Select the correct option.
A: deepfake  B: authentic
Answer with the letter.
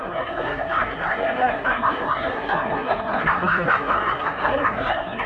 A